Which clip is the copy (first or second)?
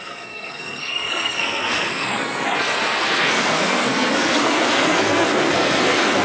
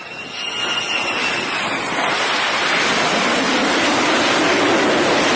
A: first